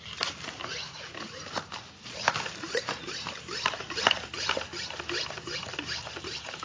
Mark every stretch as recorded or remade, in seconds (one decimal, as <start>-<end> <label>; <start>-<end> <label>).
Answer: 0.0-4.7 remade; 4.7-5.3 recorded; 5.3-6.6 remade